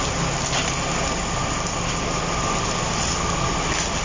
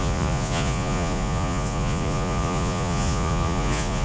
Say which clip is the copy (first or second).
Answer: second